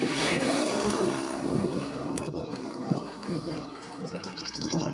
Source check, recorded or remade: remade